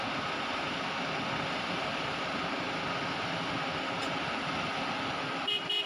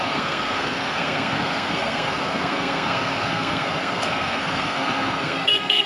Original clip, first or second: first